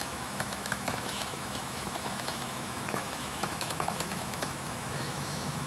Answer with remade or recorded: remade